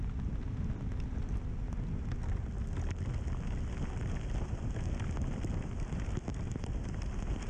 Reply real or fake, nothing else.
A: real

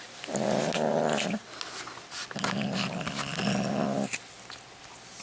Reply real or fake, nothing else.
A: real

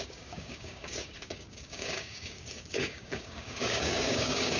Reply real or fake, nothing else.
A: fake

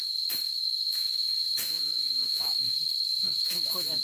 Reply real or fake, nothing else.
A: fake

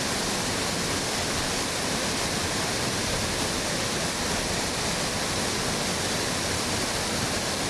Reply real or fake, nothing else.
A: real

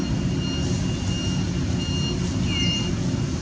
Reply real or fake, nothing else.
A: real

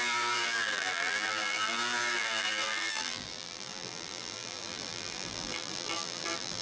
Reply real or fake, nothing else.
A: fake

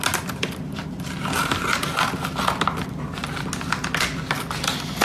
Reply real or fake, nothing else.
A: real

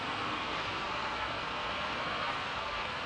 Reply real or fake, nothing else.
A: fake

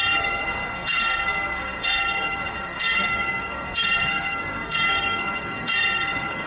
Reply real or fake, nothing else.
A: fake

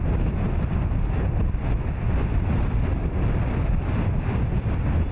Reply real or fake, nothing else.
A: real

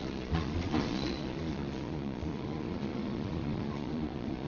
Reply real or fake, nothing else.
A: fake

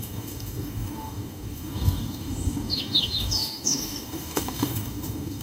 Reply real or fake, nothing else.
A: fake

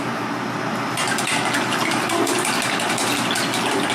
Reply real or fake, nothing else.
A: real